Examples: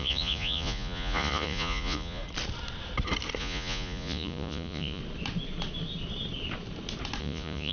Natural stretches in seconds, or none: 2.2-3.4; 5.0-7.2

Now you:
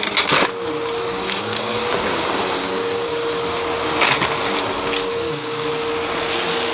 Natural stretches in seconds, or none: 0.0-1.1; 3.1-5.1; 5.7-6.7